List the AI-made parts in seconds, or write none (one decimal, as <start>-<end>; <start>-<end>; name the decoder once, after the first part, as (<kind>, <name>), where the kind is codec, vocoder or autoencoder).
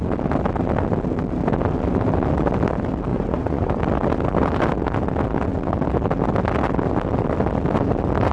3.1-3.8 (vocoder, Vocos)